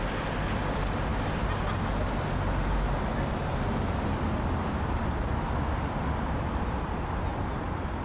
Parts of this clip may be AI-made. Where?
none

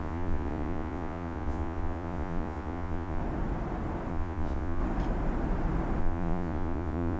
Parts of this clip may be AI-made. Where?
0.0-3.2 (vocoder, Vocos); 4.1-4.8; 6.0-7.2